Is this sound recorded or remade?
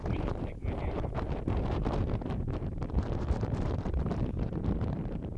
remade